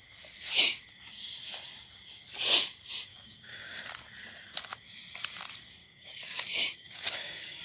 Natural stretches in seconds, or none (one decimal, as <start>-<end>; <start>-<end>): 0.0-3.1; 3.8-5.8

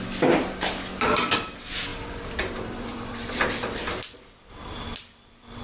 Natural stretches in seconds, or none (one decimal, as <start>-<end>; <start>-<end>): 0.0-1.9

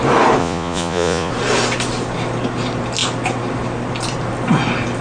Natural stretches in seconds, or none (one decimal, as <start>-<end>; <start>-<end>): 0.0-0.4; 1.3-5.0

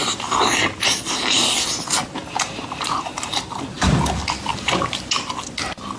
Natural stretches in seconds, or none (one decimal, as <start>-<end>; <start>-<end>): 3.6-4.5; 5.1-6.0